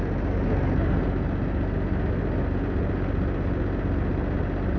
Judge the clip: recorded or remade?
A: recorded